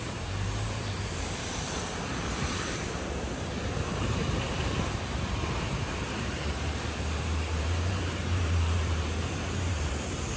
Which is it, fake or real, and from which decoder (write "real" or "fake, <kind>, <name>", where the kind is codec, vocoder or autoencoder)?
fake, vocoder, BigVGAN v2